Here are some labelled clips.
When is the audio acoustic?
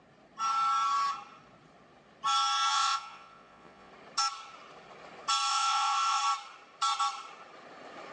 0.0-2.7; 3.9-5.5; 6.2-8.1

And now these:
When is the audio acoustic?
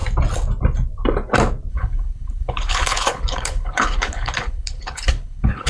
0.0-1.7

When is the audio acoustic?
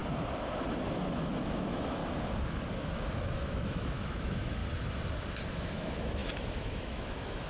0.0-1.3; 2.0-2.8; 4.6-5.5